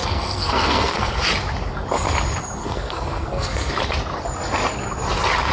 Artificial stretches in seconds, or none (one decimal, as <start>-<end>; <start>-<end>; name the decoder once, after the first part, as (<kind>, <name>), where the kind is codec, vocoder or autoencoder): 0.0-1.1 (codec, SNAC); 2.6-3.7